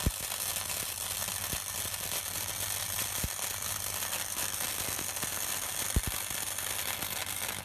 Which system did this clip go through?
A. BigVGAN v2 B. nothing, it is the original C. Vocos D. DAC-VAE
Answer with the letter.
B